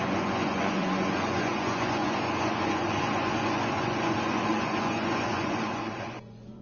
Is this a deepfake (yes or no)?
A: yes